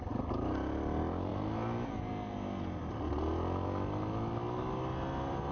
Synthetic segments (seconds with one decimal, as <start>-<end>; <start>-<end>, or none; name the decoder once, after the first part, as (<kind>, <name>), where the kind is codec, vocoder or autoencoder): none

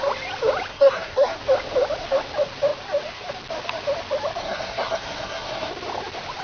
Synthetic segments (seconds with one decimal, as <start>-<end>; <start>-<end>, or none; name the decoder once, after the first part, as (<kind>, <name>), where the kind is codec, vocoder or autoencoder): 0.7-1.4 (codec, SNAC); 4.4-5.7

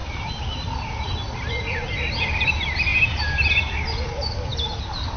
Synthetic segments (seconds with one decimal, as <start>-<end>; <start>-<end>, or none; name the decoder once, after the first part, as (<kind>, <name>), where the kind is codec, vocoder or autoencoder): 0.0-2.5 (vocoder, BigVGAN v2); 2.9-3.5

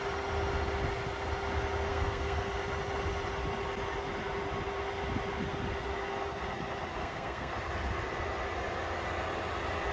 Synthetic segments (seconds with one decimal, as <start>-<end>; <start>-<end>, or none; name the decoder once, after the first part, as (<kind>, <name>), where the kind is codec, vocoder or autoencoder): 1.9-2.5 (codec, SNAC); 7.0-7.5